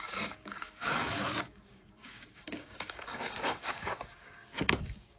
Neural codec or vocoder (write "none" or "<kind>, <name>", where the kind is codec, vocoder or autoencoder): codec, DAC